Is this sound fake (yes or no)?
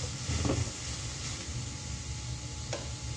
no